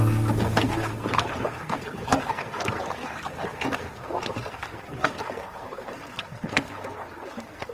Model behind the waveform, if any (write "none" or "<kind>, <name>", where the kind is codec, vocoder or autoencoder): codec, SNAC